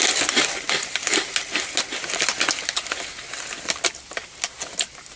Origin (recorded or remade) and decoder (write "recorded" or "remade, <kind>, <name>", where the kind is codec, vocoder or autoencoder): recorded